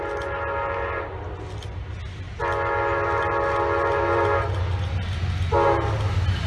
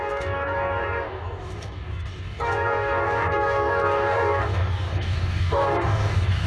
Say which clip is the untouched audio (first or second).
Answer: first